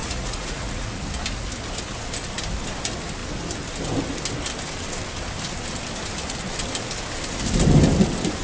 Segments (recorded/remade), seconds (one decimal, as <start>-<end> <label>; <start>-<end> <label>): 0.0-1.0 remade; 1.0-8.4 recorded